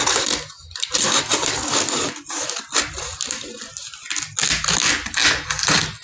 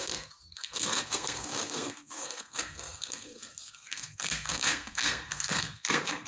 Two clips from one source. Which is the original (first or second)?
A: first